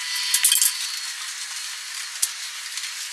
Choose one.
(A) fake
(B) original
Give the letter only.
B